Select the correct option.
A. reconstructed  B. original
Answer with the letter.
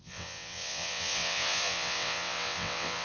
A